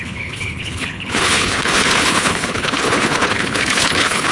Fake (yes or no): yes